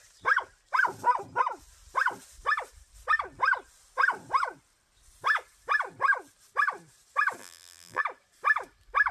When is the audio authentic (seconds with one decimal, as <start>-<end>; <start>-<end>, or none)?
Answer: 0.0-7.4; 8.0-9.1